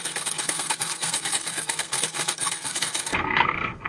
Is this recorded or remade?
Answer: remade